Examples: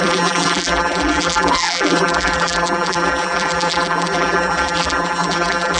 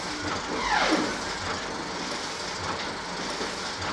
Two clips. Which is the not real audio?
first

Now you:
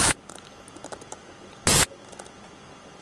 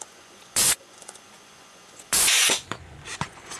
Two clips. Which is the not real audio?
second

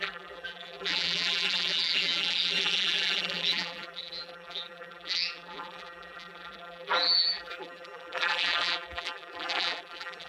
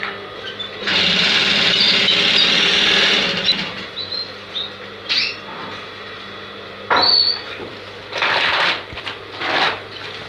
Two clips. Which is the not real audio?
first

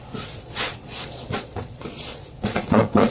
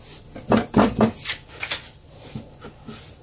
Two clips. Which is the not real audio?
first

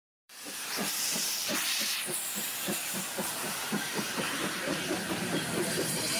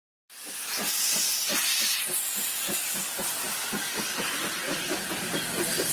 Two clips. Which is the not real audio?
first